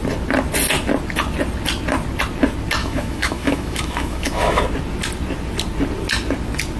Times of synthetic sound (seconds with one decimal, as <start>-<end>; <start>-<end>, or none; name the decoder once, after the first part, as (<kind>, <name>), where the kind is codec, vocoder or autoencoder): 2.8-4.6 (autoencoder, DAC-VAE)